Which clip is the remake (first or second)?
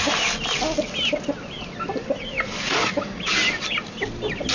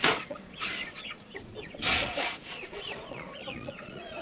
second